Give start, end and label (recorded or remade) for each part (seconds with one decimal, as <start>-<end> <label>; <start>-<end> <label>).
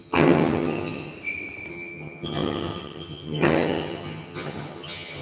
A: 0.0-1.1 remade; 1.1-1.7 recorded; 1.7-5.2 remade